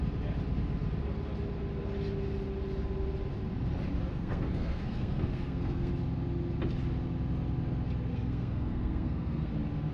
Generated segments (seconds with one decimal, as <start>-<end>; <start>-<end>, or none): 4.1-5.9; 8.1-9.5